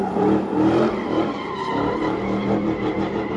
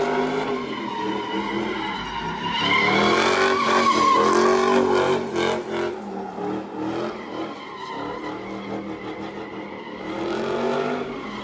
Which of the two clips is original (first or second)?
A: second